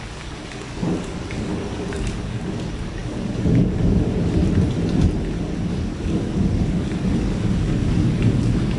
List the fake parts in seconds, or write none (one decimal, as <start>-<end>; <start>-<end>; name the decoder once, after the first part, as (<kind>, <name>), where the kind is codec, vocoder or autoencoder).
0.0-4.4 (codec, DAC); 5.7-8.8